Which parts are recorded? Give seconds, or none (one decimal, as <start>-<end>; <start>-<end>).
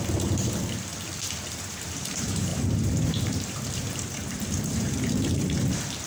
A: 0.9-1.5